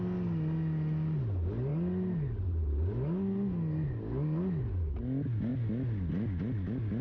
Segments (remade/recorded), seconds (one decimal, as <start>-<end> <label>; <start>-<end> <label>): 0.0-7.0 recorded

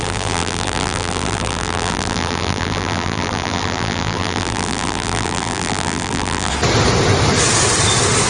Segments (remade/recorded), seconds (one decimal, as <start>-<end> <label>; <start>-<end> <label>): 0.0-6.5 remade; 6.5-8.3 recorded